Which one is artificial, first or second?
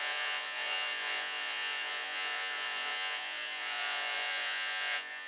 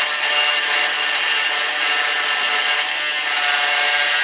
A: first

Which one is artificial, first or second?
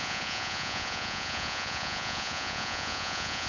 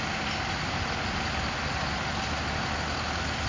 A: first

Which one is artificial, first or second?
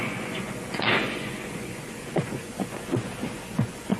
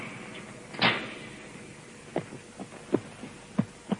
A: first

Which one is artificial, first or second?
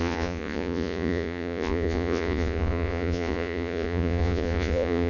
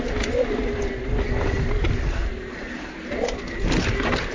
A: first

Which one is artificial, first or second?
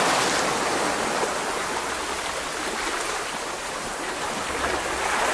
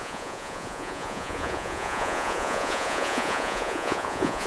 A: second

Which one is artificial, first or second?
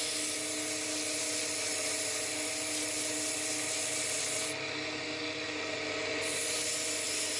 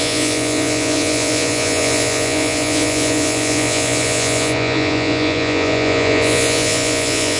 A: second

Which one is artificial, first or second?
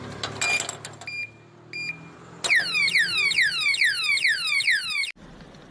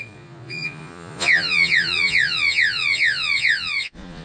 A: second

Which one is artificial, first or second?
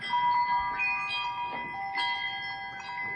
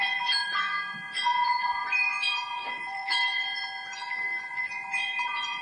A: second